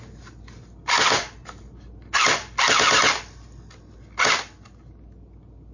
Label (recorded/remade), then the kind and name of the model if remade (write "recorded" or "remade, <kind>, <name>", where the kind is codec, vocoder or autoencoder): recorded